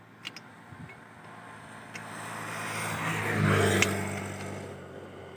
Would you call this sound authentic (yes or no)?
yes